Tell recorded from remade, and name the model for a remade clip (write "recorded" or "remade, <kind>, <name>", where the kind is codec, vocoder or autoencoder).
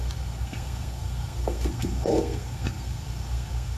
remade, codec, SNAC